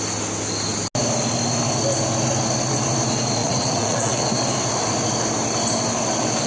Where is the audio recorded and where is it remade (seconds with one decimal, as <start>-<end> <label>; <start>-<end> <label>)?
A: 0.0-3.4 recorded; 3.4-4.2 remade; 4.2-6.5 recorded